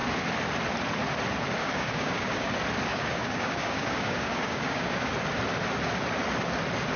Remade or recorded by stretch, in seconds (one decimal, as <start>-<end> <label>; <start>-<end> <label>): 0.0-1.6 recorded; 1.6-2.5 remade; 2.5-2.9 recorded; 2.9-5.1 remade; 5.1-7.0 recorded